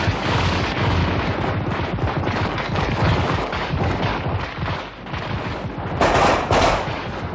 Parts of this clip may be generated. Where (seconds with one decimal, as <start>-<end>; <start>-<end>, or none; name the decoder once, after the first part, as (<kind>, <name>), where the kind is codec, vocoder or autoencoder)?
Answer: 0.0-1.0 (codec, DAC); 2.2-4.1; 6.6-7.3